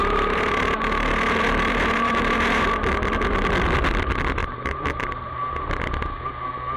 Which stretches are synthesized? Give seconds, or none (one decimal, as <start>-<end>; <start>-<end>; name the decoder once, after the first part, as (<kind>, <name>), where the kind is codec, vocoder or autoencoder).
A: 0.0-2.7 (vocoder, BigVGAN v2); 4.4-5.6